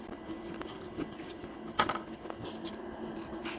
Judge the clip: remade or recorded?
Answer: recorded